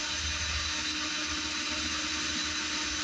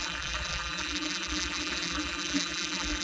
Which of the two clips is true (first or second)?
first